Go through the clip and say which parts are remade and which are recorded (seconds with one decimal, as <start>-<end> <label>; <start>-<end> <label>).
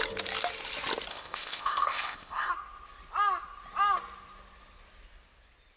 0.0-1.1 recorded; 1.1-2.5 remade; 2.5-5.8 recorded